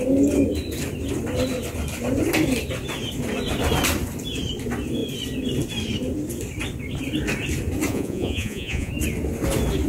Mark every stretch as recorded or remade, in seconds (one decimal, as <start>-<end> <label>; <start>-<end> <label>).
0.0-7.9 recorded; 7.9-8.9 remade; 8.9-9.9 recorded